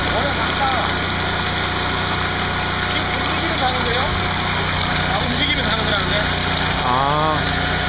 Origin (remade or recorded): recorded